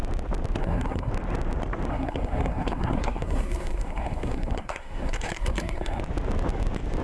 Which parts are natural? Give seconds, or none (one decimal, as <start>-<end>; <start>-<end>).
0.0-0.6; 1.1-1.9; 6.0-7.0